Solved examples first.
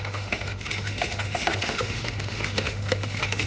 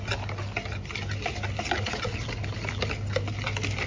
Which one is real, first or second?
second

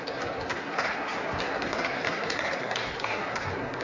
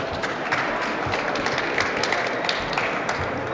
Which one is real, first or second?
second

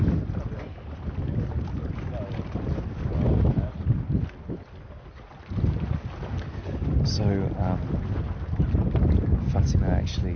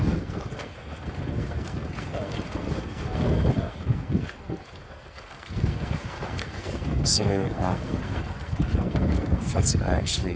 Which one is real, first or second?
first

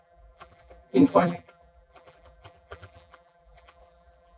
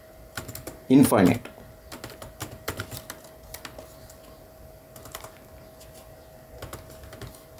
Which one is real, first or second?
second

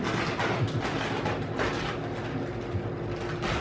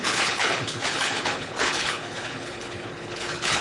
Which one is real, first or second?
first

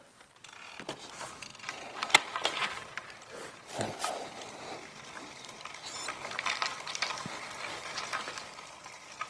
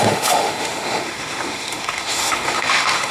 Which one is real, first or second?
first